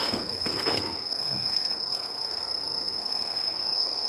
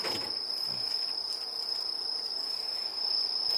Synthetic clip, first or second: first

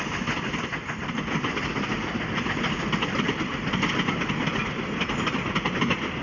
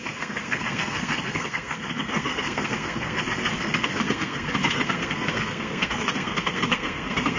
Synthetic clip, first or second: second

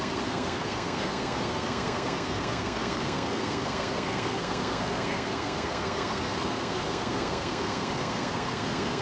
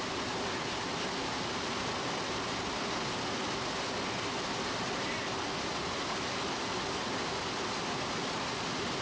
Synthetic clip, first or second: first